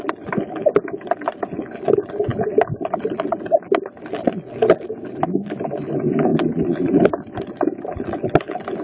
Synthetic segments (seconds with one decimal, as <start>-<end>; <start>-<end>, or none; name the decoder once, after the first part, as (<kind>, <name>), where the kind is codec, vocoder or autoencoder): none